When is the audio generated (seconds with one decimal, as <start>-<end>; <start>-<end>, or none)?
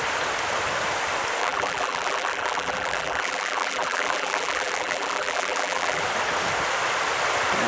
1.4-6.0